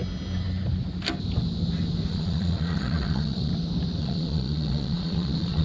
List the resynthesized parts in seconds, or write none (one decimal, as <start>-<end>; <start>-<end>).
2.1-3.5; 4.0-5.6